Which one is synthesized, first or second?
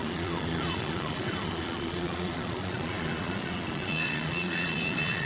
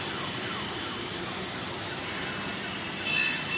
first